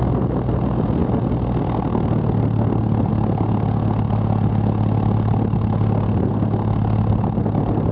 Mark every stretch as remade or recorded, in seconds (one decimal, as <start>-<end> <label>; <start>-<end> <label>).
0.0-7.9 recorded

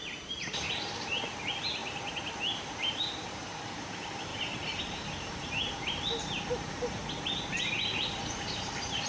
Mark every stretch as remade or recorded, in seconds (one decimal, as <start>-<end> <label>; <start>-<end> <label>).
0.0-1.8 remade; 1.8-2.4 recorded; 2.4-4.3 remade; 4.3-4.8 recorded; 4.8-7.0 remade; 7.0-8.3 recorded; 8.3-9.1 remade